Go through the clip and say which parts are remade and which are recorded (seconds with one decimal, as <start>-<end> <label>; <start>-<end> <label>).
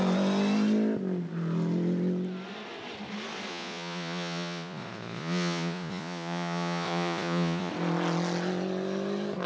0.0-3.5 recorded; 3.5-7.7 remade; 7.7-9.5 recorded